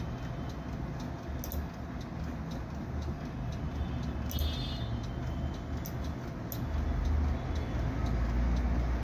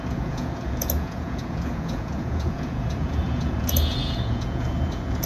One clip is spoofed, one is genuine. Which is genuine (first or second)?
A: first